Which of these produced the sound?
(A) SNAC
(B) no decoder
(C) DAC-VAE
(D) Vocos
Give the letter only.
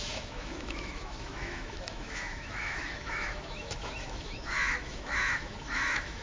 C